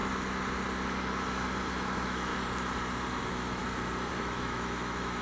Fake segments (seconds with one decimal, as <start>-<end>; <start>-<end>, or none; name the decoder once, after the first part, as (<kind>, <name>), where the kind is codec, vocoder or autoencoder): 1.8-2.3 (autoencoder, DAC-VAE); 3.2-3.6; 4.1-5.2